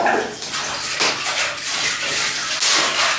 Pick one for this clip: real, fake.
real